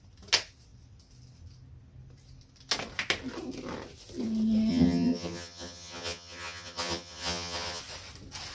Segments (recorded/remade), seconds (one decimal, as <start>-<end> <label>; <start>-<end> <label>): 0.0-4.7 recorded; 4.7-7.8 remade; 7.8-8.5 recorded